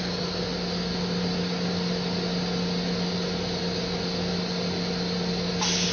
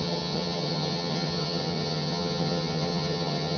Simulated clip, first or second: second